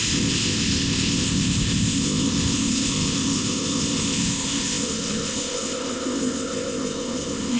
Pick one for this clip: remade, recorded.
remade